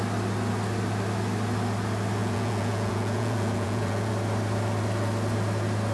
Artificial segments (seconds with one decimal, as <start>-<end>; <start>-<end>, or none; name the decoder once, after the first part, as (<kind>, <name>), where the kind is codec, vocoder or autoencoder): 2.2-4.1 (vocoder, Vocos)